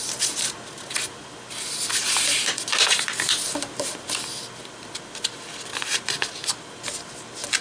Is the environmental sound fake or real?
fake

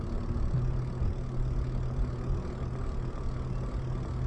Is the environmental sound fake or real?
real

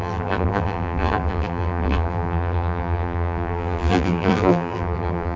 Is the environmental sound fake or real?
fake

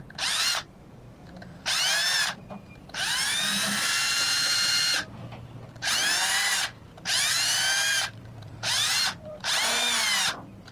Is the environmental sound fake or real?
fake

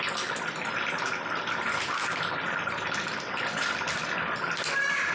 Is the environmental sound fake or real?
fake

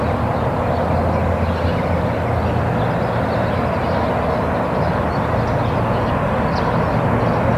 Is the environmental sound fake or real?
real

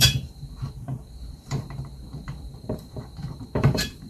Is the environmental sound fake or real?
fake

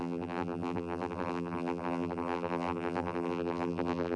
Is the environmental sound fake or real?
fake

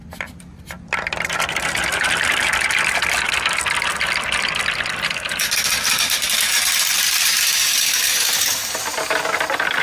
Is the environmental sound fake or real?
real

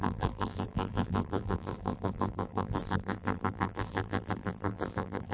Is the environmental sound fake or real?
fake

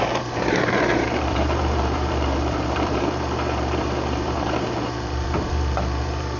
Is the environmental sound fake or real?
fake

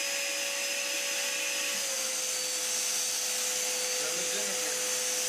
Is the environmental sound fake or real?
real